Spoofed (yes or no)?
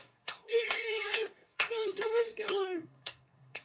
yes